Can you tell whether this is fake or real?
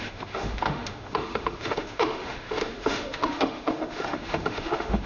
fake